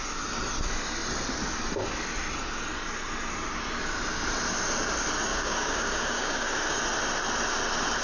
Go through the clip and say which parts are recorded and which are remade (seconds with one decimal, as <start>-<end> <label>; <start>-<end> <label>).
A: 0.0-5.3 recorded; 5.3-6.8 remade; 6.8-8.0 recorded